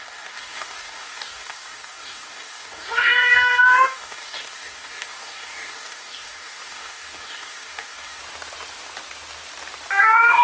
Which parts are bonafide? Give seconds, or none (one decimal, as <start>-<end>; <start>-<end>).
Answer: 8.2-10.0